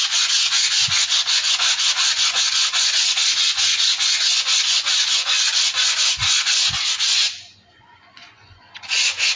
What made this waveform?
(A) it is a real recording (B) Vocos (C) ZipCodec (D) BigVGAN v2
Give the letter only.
B